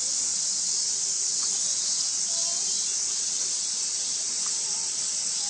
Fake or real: real